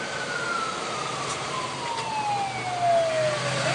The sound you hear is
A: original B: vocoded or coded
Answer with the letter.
A